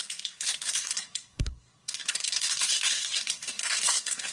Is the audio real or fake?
fake